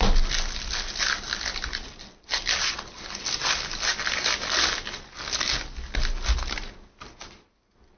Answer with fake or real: real